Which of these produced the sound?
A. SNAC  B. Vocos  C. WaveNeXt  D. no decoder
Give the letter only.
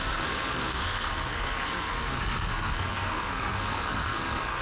A